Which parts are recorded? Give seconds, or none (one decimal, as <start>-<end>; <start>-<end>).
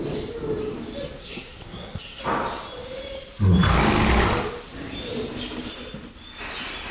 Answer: 0.0-1.2; 2.2-6.9